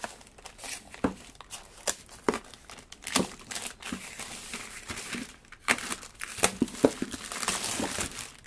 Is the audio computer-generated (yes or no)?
no